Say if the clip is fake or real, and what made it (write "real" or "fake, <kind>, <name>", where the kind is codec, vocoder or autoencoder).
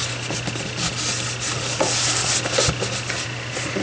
real